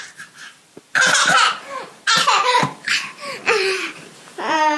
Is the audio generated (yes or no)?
yes